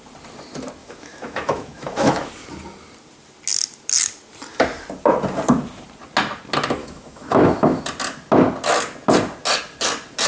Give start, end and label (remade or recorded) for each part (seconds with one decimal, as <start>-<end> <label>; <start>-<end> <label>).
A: 0.0-0.8 recorded; 0.8-2.3 remade; 2.3-6.8 recorded; 6.8-7.8 remade; 7.8-10.3 recorded

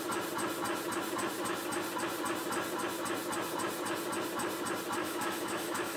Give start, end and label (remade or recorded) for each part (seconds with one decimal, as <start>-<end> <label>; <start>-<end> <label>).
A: 0.0-5.0 recorded; 5.0-6.0 remade

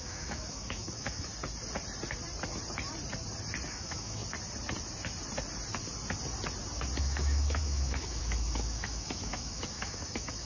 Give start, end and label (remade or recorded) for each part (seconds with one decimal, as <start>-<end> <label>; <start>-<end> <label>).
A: 0.0-1.3 remade; 1.3-3.7 recorded; 3.7-4.2 remade; 4.2-7.0 recorded; 7.0-10.5 remade

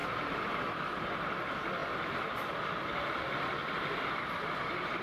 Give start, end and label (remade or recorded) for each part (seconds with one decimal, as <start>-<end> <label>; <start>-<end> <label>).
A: 0.0-5.0 recorded

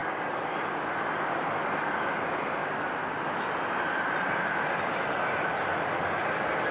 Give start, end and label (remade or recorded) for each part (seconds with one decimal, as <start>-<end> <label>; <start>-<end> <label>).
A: 0.0-6.7 recorded